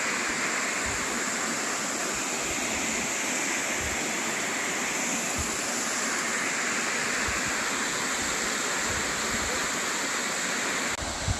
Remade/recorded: recorded